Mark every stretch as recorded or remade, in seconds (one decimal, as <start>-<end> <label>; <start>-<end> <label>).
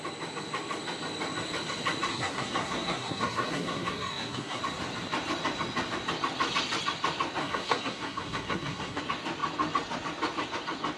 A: 0.0-2.1 recorded; 2.1-4.6 remade; 4.6-7.4 recorded; 7.4-9.0 remade; 9.0-11.0 recorded